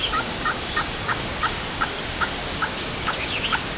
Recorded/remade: remade